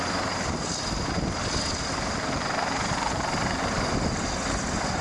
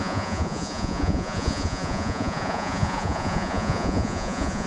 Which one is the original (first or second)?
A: first